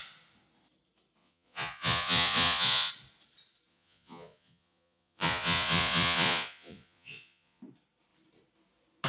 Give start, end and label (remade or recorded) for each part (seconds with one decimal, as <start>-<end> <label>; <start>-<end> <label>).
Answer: 0.0-1.2 recorded; 1.2-2.9 remade; 2.9-3.7 recorded; 3.7-7.6 remade; 7.6-9.1 recorded